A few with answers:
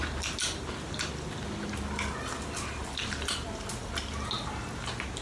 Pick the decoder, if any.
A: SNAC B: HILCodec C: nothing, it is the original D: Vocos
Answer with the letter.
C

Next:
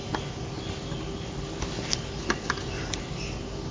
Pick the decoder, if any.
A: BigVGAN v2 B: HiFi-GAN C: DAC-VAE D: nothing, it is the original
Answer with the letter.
D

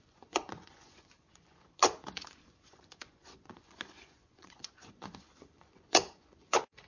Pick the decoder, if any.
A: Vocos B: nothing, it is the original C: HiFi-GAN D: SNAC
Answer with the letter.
A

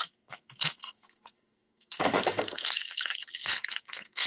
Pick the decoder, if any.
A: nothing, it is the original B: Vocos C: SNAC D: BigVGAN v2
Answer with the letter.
C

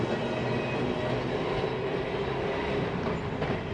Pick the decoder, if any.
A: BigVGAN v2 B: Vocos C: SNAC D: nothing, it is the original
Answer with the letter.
D